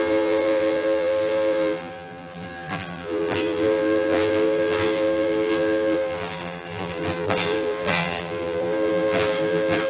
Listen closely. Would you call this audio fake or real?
fake